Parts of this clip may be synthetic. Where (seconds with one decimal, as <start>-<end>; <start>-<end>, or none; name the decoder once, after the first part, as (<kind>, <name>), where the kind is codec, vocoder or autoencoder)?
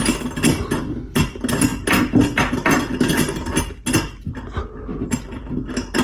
4.9-5.5 (vocoder, BigVGAN v2)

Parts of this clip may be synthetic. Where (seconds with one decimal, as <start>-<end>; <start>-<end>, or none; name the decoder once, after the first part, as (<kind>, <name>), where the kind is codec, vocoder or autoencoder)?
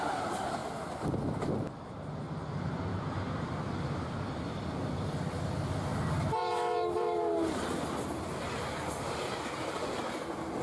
2.9-3.7 (vocoder, BigVGAN v2); 5.9-9.4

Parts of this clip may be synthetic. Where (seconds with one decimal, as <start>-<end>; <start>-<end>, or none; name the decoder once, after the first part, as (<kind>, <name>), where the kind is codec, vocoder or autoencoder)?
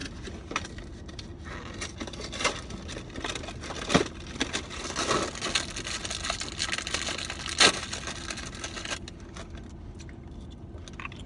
none